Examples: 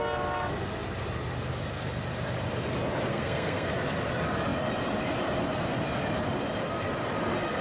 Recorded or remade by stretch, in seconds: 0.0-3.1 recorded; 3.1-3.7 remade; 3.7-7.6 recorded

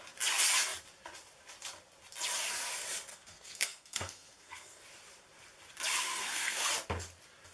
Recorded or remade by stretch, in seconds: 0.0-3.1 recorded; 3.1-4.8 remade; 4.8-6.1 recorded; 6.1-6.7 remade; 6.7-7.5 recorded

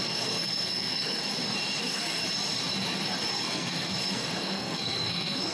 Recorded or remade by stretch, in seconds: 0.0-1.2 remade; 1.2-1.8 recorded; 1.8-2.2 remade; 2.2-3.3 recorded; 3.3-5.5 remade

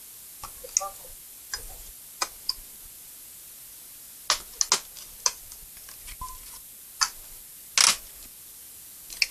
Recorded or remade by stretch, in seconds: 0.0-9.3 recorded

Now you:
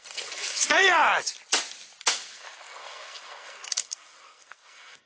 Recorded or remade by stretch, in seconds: 0.0-0.8 remade; 0.8-2.0 recorded; 2.0-5.1 remade